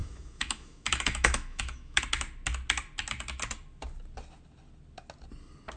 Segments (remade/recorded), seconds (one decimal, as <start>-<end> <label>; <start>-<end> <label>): 0.0-2.0 remade; 2.0-5.8 recorded

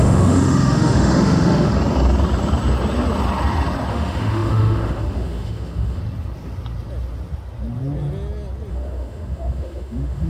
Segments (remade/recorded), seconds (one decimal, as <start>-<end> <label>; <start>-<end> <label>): 0.0-1.7 remade; 1.7-3.9 recorded; 3.9-6.0 remade; 6.0-8.7 recorded; 8.7-10.3 remade

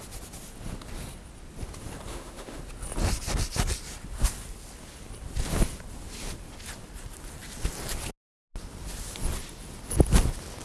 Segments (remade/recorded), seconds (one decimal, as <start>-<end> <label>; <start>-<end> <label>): 0.0-2.1 recorded; 2.1-2.6 remade; 2.6-10.6 recorded